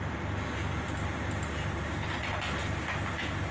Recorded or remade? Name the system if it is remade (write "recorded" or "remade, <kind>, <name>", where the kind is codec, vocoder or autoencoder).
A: recorded